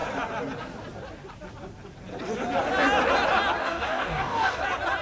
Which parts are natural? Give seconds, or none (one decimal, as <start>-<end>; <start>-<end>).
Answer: 0.0-3.6; 4.6-5.0